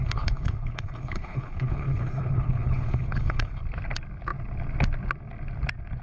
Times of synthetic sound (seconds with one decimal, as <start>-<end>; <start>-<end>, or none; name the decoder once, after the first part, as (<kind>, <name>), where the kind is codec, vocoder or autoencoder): 0.0-3.6 (codec, HILCodec)